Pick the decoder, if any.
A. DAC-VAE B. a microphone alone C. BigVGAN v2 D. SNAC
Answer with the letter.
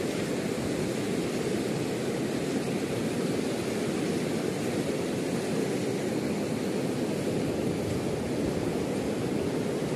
B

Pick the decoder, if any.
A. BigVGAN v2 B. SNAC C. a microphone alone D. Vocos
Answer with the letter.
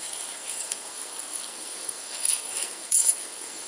B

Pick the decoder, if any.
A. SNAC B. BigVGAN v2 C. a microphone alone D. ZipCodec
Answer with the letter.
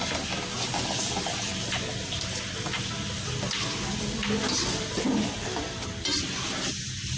C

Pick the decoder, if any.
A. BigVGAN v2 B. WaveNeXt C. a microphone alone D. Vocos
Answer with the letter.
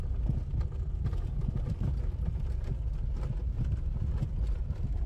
C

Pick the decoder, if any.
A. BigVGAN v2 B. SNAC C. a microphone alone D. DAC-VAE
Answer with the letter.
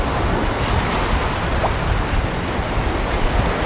C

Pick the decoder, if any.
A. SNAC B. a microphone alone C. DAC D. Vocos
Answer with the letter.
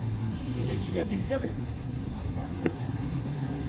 A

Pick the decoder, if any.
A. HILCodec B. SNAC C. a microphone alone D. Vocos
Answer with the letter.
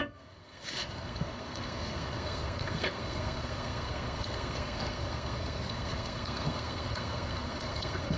B